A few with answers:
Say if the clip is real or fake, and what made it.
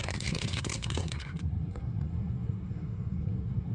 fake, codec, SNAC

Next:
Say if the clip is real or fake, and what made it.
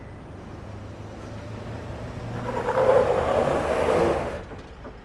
real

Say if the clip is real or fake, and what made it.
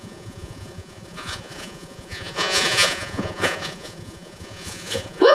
fake, vocoder, Vocos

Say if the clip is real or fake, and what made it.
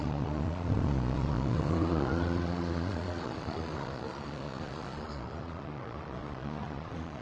fake, vocoder, Vocos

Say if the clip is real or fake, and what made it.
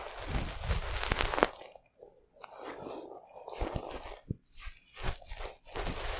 real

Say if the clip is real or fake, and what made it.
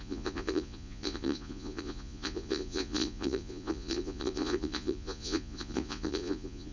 fake, vocoder, Vocos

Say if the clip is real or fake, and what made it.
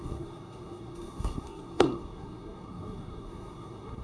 fake, codec, SNAC